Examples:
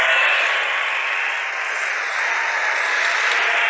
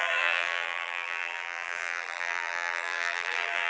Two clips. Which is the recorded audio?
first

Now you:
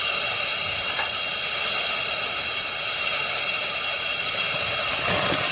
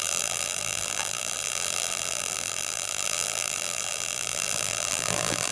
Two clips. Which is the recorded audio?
first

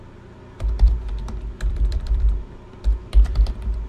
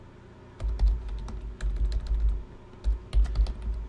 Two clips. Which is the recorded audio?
second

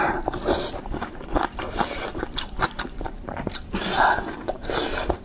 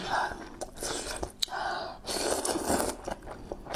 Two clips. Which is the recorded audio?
second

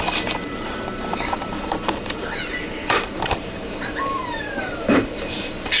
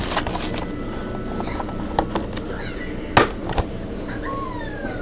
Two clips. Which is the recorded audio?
second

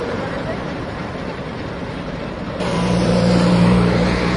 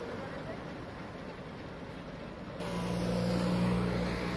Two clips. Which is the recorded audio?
second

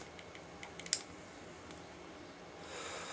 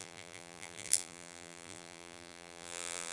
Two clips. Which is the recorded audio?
first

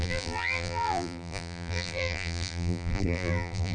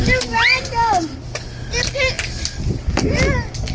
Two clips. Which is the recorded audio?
second